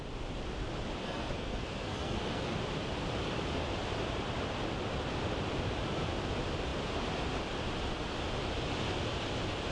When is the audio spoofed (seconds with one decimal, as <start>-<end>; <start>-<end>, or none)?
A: 1.0-2.6